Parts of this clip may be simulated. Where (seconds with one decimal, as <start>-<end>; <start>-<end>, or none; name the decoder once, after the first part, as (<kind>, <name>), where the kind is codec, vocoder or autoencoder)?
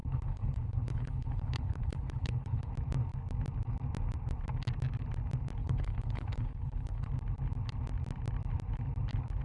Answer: 0.0-2.7 (codec, HILCodec); 5.6-7.1